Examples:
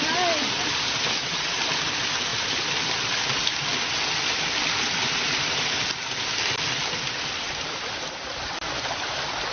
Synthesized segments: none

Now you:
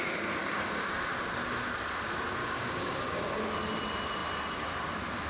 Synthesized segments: 0.4-1.1 (codec, DAC); 2.4-3.3

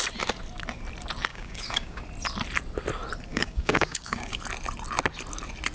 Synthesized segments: 1.3-2.0 (codec, DAC); 3.3-4.4

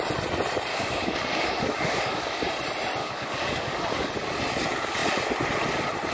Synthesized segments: 0.7-2.5 (codec, DAC); 3.0-4.1